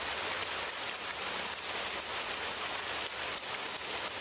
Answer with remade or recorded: recorded